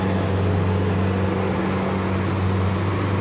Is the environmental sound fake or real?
real